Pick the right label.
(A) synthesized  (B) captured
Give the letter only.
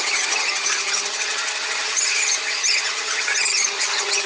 A